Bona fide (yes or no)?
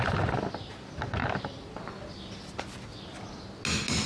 yes